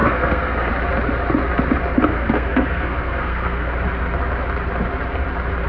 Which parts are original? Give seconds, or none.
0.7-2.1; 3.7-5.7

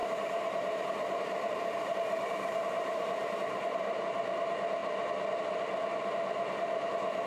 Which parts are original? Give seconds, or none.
4.0-7.3

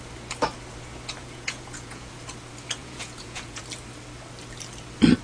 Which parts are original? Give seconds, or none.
0.0-1.2; 2.1-2.8; 3.6-5.2

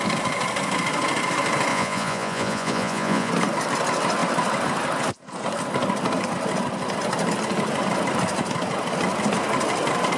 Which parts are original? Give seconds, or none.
0.0-1.7; 3.3-10.2